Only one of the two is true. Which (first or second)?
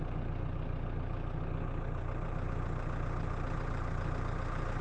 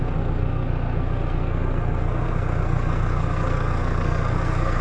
first